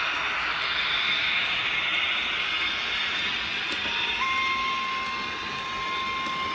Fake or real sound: real